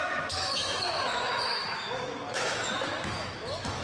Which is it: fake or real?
fake